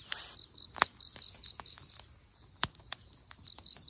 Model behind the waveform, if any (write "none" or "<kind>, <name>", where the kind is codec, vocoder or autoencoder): none